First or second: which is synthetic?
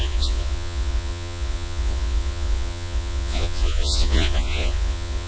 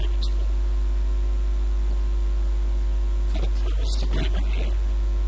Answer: first